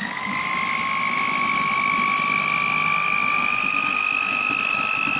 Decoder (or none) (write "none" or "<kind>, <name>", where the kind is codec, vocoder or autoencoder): none